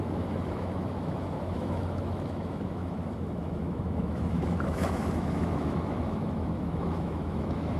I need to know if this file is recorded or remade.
remade